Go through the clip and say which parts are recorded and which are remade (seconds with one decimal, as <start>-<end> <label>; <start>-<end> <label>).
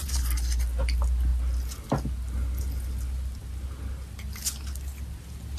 0.0-5.6 recorded